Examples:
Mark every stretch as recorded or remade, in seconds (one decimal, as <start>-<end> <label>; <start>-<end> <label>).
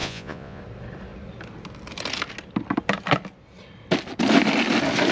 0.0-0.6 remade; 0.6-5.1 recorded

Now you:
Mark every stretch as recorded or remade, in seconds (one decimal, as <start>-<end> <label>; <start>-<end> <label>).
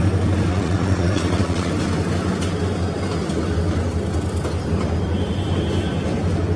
0.0-0.5 recorded; 0.5-1.7 remade; 1.7-6.6 recorded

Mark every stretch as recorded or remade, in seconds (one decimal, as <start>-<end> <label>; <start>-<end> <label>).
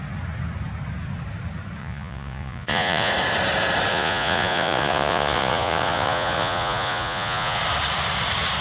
0.0-1.8 recorded; 1.8-3.1 remade; 3.1-3.9 recorded; 3.9-7.6 remade; 7.6-8.6 recorded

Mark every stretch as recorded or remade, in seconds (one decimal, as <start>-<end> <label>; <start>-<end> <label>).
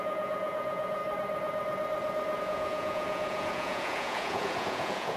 0.0-1.0 remade; 1.0-2.4 recorded; 2.4-5.2 remade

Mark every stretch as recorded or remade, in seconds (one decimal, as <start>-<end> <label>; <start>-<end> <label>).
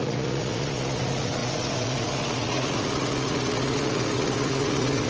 0.0-5.1 remade